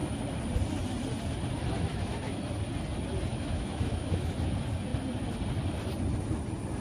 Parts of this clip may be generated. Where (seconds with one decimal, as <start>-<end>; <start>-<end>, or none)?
1.9-2.4; 3.3-4.3